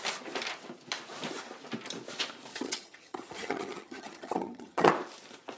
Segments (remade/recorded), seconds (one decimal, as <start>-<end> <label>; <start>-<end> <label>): 0.0-2.5 recorded; 2.5-4.9 remade; 4.9-5.6 recorded